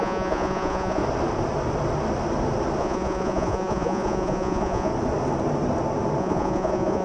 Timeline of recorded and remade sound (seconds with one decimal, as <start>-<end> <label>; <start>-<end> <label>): 0.0-1.0 remade; 1.0-2.8 recorded; 2.8-4.9 remade; 4.9-6.2 recorded; 6.2-7.0 remade